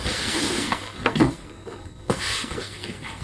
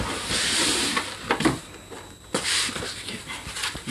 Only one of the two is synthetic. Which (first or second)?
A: first